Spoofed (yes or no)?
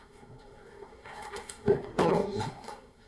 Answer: yes